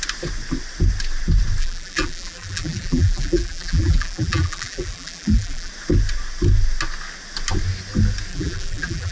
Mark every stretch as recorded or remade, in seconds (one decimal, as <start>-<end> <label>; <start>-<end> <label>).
0.0-1.6 recorded; 1.6-5.7 remade; 5.7-8.3 recorded; 8.3-9.1 remade

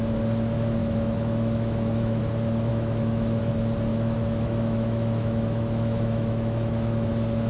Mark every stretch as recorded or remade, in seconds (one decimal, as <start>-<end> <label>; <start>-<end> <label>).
0.0-0.8 recorded; 0.8-2.2 remade; 2.2-2.7 recorded; 2.7-3.5 remade; 3.5-3.9 recorded; 3.9-7.1 remade; 7.1-7.5 recorded

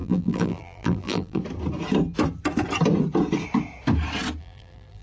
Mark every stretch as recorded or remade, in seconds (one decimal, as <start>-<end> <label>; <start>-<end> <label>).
0.0-1.4 remade; 1.4-4.4 recorded; 4.4-5.0 remade

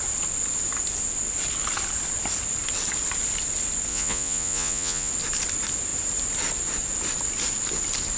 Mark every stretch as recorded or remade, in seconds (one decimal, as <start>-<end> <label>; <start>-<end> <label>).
0.0-3.9 recorded; 3.9-5.1 remade; 5.1-8.2 recorded

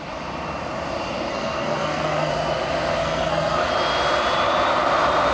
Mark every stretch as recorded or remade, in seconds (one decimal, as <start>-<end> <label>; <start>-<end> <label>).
0.0-1.3 recorded; 1.3-2.3 remade; 2.3-3.0 recorded; 3.0-3.7 remade; 3.7-5.3 recorded